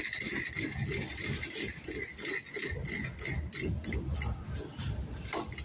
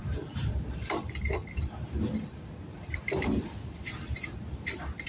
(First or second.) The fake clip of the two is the second